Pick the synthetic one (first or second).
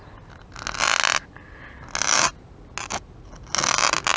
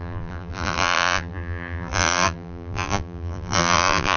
second